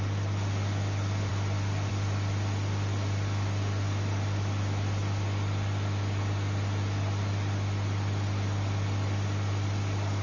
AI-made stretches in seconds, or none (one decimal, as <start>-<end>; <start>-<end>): none